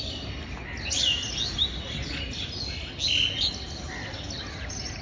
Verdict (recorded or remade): recorded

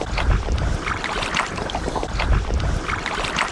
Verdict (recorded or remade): recorded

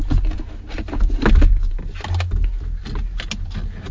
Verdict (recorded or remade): recorded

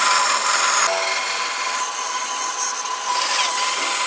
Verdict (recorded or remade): recorded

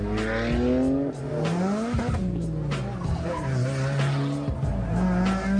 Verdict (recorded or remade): recorded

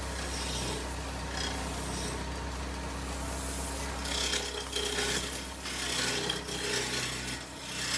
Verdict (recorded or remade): recorded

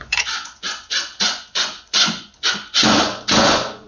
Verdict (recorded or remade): remade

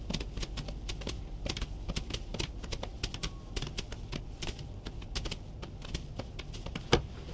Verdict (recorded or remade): recorded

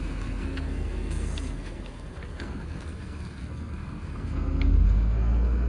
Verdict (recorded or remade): remade